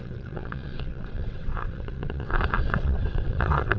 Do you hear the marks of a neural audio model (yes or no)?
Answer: yes